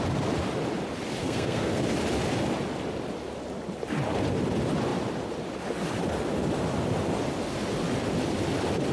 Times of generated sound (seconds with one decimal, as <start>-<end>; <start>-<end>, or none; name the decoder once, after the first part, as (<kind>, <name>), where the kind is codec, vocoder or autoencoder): 1.2-1.8 (codec, SNAC)